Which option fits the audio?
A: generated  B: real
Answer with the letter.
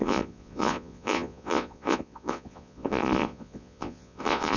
A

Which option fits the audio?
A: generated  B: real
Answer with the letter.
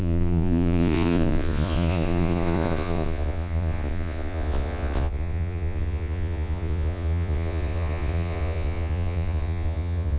A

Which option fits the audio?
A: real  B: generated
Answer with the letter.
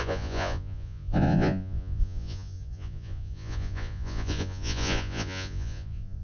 B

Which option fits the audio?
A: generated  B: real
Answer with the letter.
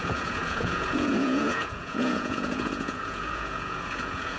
A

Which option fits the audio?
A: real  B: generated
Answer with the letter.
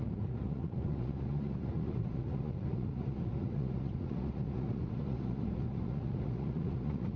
B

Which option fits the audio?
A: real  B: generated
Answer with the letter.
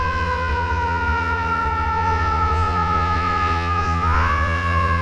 B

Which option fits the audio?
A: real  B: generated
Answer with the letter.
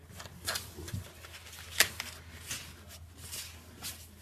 A